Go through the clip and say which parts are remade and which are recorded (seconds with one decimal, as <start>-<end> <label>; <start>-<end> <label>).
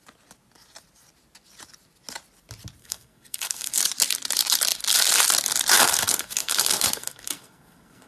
0.0-2.8 recorded; 2.8-3.8 remade; 3.8-5.7 recorded; 5.7-8.1 remade